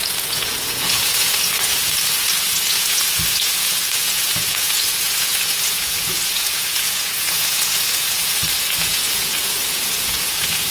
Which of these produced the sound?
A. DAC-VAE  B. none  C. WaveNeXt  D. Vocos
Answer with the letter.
D